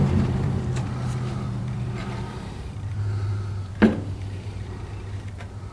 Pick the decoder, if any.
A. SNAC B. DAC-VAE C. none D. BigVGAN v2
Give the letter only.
D